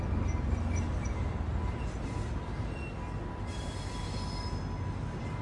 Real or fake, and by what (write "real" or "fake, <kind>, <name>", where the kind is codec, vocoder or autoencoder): real